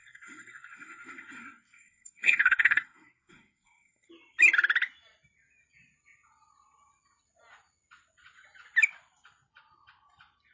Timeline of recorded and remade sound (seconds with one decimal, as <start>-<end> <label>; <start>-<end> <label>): 0.0-4.1 remade; 4.1-10.5 recorded

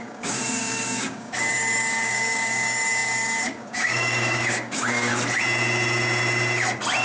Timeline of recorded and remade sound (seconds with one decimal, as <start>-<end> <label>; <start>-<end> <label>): 0.0-5.1 remade; 5.1-7.0 recorded

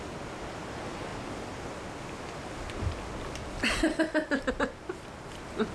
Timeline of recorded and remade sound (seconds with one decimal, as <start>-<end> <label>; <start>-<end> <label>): 0.0-5.7 recorded

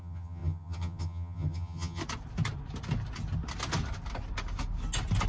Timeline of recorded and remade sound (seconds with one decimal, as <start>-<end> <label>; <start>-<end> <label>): 0.0-2.0 remade; 2.0-5.3 recorded

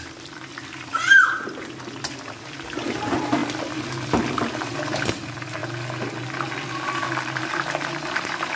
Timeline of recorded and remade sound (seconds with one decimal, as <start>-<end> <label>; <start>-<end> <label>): 0.0-5.6 remade; 5.6-7.0 recorded; 7.0-8.6 remade

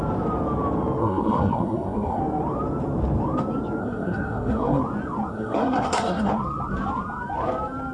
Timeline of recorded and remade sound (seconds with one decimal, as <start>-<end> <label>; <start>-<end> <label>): 0.0-1.0 recorded; 1.0-2.2 remade; 2.2-3.8 recorded; 3.8-4.8 remade; 4.8-5.3 recorded; 5.3-6.3 remade; 6.3-7.9 recorded

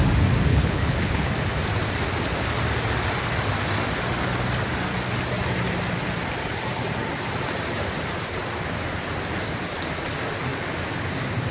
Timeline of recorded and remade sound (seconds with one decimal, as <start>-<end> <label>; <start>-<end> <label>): 0.0-0.5 recorded; 0.5-1.3 remade; 1.3-11.5 recorded

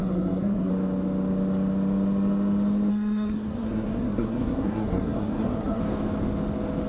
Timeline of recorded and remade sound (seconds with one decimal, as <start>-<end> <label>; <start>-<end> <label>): 0.0-0.7 remade; 0.7-2.9 recorded; 2.9-5.8 remade; 5.8-6.9 recorded